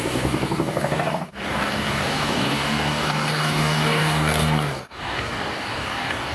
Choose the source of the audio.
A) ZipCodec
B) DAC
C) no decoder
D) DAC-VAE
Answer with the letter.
B